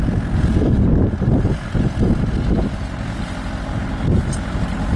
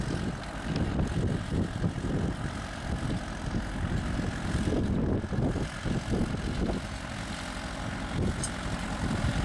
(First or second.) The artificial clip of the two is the second